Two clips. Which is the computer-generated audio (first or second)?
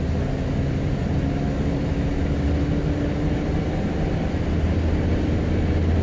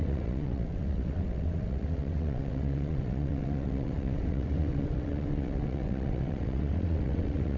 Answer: second